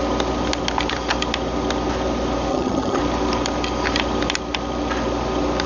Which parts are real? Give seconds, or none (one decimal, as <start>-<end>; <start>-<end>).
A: 0.0-2.5; 3.0-5.7

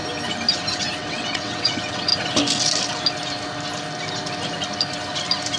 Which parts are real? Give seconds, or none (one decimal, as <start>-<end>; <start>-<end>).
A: 0.0-1.0; 2.1-5.6